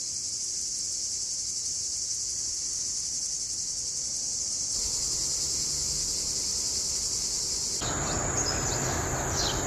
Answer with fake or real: real